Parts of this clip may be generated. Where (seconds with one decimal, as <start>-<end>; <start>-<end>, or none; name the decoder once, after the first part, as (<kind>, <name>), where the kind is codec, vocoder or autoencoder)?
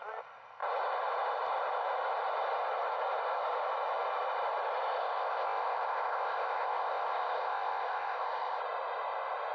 5.0-8.6 (codec, ZipCodec)